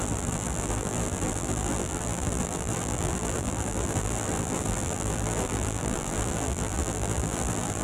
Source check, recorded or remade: remade